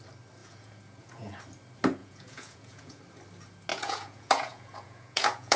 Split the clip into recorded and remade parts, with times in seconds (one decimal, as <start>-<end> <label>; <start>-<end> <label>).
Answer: 0.0-0.4 recorded; 0.4-1.4 remade; 1.4-2.0 recorded; 2.0-3.0 remade; 3.0-3.7 recorded; 3.7-5.6 remade